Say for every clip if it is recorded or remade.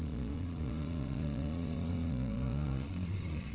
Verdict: remade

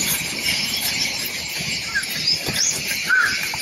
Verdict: remade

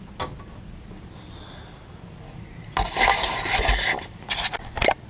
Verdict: recorded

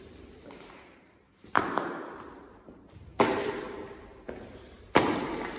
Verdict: remade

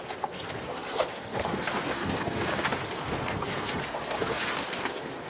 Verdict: remade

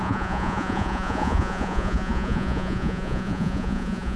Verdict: remade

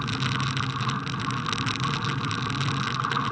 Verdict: recorded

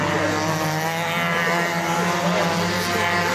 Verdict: recorded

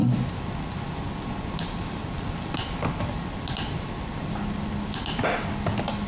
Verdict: recorded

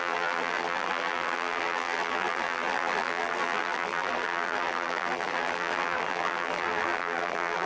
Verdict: remade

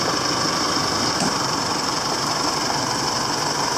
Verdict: remade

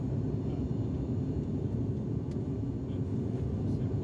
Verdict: recorded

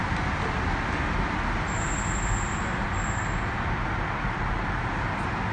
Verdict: recorded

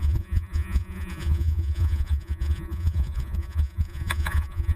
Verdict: remade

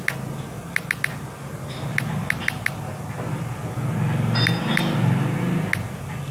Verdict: recorded